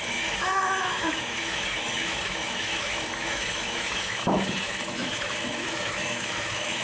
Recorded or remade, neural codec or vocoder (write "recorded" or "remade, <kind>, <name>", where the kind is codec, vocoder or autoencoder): remade, autoencoder, DAC-VAE